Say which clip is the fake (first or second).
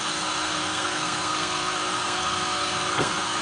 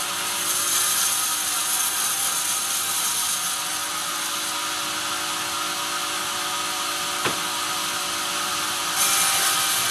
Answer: first